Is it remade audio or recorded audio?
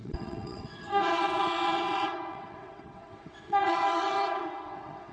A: remade